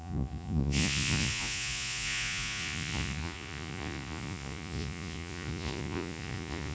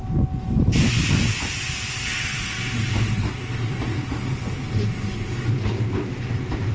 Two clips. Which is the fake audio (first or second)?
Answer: first